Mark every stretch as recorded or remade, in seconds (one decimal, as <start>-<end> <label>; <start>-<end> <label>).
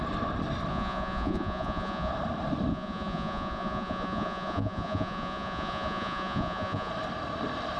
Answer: 0.0-0.7 recorded; 0.7-2.1 remade; 2.1-2.7 recorded; 2.7-6.9 remade; 6.9-7.8 recorded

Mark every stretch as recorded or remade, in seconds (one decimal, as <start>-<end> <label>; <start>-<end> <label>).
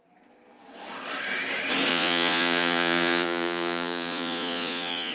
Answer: 0.0-1.9 recorded; 1.9-5.1 remade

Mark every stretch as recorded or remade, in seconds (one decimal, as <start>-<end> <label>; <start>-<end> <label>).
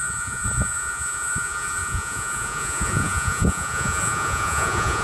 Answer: 0.0-5.0 remade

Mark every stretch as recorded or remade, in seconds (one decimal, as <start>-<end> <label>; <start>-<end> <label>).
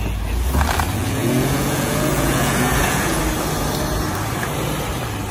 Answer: 0.0-1.0 recorded; 1.0-3.2 remade; 3.2-5.3 recorded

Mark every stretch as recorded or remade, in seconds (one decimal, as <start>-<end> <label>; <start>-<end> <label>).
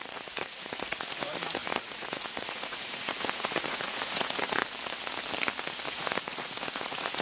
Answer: 0.0-4.6 remade; 4.6-5.9 recorded; 5.9-7.2 remade